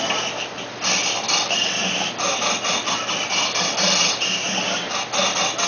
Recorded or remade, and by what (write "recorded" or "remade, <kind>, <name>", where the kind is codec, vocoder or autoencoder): recorded